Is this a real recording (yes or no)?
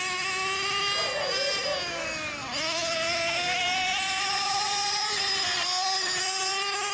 no